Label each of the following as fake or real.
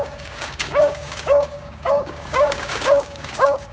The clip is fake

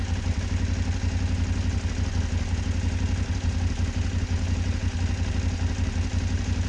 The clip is real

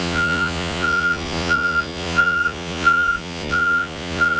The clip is fake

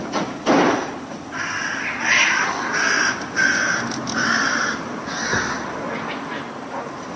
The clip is real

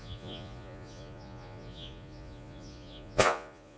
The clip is fake